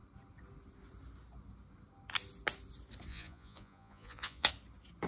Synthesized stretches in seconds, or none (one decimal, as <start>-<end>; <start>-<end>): 3.1-4.5